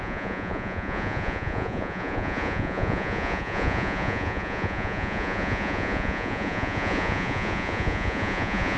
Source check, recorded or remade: remade